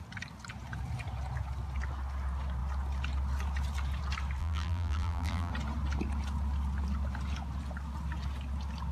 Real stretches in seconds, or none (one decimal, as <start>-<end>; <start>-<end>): 0.0-4.4; 5.5-8.9